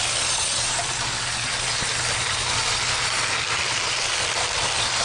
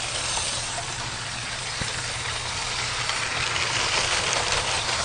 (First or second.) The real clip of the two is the first